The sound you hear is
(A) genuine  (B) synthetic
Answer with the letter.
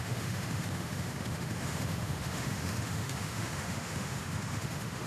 B